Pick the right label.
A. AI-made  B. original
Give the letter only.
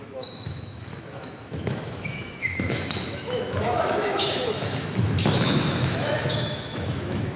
A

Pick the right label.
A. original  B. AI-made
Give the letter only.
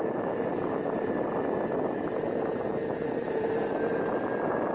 A